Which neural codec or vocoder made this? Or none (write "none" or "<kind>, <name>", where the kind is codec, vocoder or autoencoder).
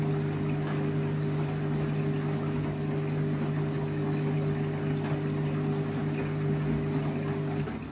none